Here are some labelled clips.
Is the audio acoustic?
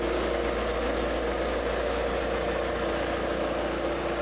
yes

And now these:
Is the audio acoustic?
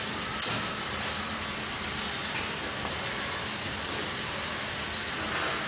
yes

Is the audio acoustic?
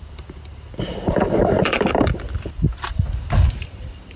no